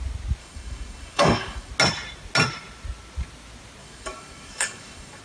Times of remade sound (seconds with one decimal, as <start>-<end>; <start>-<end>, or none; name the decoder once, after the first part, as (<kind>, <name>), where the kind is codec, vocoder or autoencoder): 0.4-1.7 (codec, DAC); 3.8-5.2